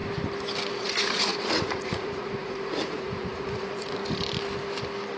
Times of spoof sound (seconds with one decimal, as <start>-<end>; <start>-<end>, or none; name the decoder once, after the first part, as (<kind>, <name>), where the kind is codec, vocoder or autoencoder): 0.7-4.0 (vocoder, Vocos)